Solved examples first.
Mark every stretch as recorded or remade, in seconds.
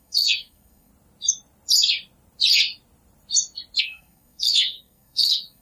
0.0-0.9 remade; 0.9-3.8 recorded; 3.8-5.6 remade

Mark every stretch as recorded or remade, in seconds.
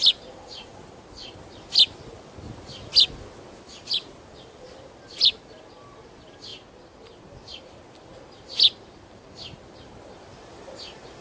0.0-8.1 recorded; 8.1-9.2 remade; 9.2-11.2 recorded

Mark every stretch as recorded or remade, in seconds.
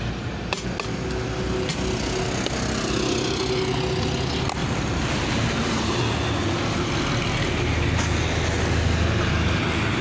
0.0-4.6 recorded; 4.6-6.0 remade; 6.0-10.0 recorded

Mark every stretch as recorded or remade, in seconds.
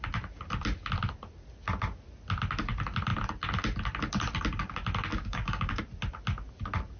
0.0-5.1 recorded; 5.1-5.8 remade; 5.8-7.0 recorded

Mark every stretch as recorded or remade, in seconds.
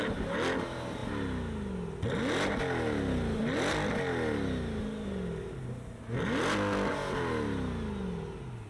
0.0-8.7 recorded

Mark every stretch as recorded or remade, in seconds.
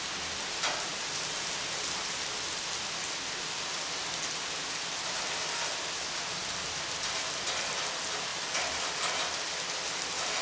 0.0-8.3 recorded; 8.3-10.4 remade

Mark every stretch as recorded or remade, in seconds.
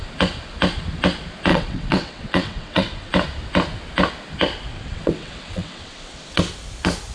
0.0-1.5 recorded; 1.5-3.1 remade; 3.1-4.7 recorded; 4.7-6.4 remade; 6.4-7.1 recorded